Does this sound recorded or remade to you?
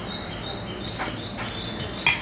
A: recorded